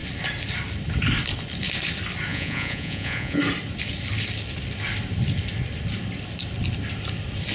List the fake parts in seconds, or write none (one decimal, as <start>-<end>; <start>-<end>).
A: 2.3-3.4